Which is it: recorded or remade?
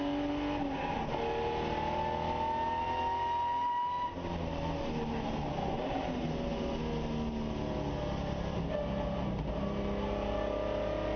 recorded